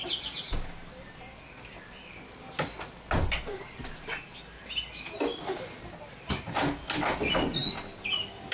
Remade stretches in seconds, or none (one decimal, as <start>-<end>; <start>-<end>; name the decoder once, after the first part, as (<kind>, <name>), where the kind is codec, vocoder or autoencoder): none